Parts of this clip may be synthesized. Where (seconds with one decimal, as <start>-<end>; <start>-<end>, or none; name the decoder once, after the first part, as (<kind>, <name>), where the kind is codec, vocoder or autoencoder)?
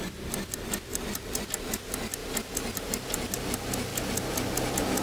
none